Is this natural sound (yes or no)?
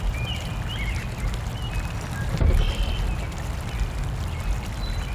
yes